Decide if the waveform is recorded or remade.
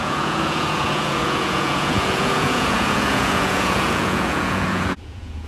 remade